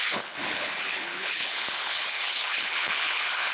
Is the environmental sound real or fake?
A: fake